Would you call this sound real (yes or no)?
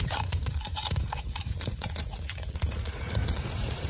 no